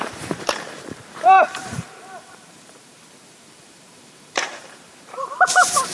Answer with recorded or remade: remade